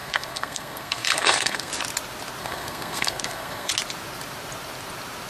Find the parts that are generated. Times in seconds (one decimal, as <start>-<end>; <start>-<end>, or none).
0.0-1.7; 2.4-3.7